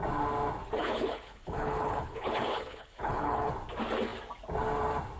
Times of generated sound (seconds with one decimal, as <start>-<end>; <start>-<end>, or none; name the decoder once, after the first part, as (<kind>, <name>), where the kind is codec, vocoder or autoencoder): 0.8-3.5 (codec, HILCodec)